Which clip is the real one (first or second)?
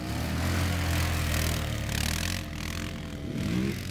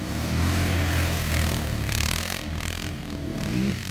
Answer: first